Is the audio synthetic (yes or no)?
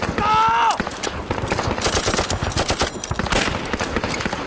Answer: no